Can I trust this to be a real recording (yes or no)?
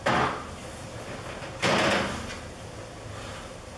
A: yes